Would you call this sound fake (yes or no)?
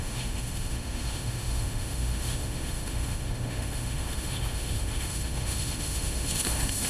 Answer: yes